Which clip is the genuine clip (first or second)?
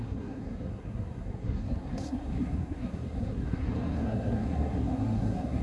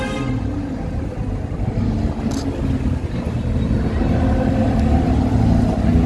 second